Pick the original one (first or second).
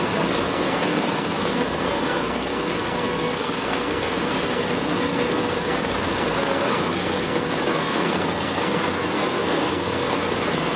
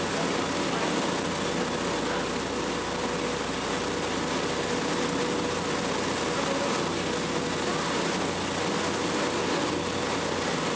second